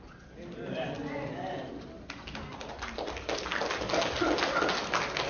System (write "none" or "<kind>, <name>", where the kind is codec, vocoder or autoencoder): none